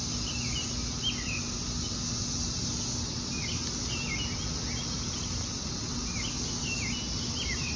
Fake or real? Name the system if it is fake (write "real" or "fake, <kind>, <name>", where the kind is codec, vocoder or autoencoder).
real